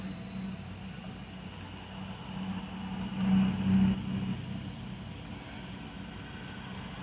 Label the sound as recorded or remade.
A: recorded